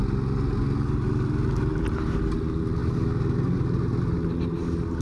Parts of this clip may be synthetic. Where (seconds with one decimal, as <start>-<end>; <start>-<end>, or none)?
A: none